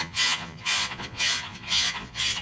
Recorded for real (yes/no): no